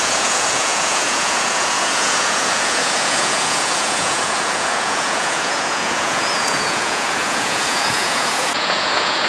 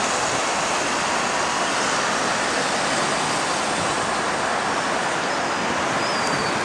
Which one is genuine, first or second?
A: second